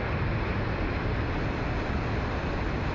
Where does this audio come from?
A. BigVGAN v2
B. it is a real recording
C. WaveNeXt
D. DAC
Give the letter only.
B